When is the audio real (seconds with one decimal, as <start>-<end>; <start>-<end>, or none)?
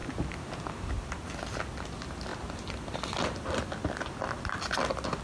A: 1.0-2.3; 3.5-5.2